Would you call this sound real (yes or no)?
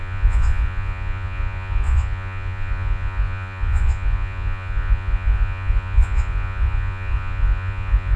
no